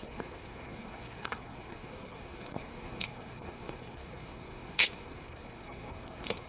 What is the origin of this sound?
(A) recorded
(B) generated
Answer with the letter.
B